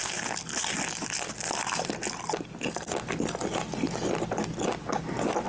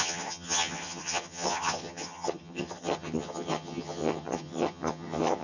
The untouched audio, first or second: first